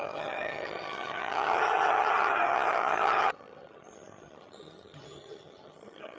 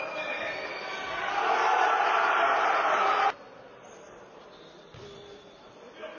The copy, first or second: first